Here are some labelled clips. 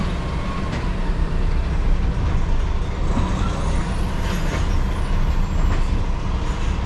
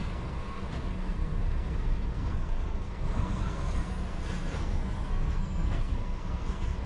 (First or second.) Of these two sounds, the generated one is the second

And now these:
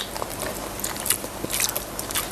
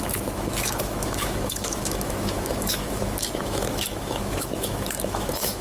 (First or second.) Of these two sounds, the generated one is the second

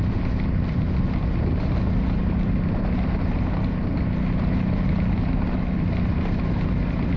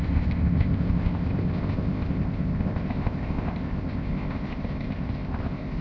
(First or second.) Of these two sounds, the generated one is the second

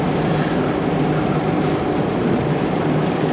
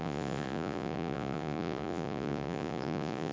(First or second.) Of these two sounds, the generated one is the second